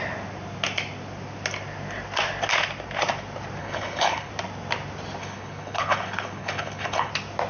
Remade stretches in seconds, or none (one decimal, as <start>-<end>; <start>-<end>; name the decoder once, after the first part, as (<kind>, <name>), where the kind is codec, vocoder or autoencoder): 3.6-4.3 (codec, HILCodec); 5.2-7.1